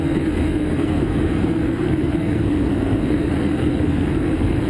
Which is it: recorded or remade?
remade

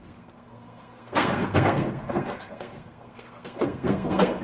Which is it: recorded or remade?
remade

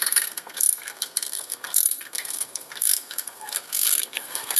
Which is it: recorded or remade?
remade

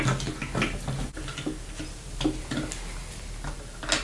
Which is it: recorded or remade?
recorded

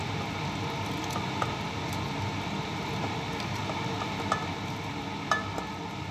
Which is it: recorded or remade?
recorded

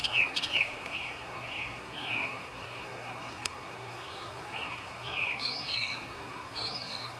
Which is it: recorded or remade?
remade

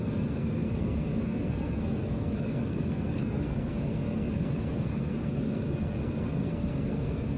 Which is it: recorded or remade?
remade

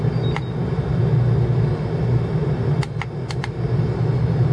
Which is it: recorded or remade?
recorded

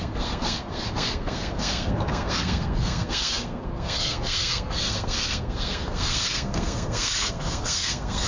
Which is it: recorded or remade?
remade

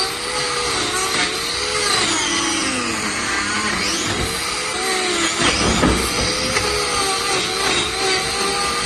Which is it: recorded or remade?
recorded